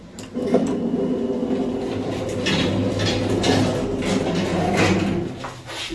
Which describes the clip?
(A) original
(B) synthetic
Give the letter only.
A